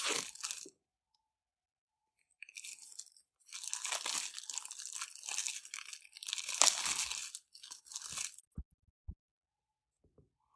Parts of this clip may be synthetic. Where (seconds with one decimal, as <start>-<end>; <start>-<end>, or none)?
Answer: none